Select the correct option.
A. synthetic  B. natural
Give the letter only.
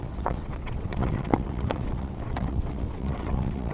A